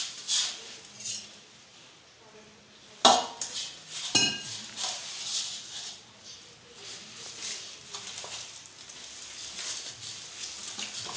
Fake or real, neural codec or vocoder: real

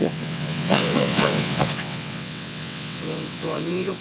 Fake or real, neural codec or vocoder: fake, vocoder, WaveNeXt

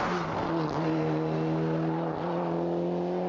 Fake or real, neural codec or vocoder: real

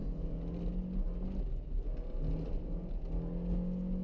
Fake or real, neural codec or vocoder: real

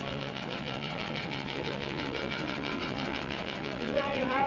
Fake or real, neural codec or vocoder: fake, vocoder, WaveNeXt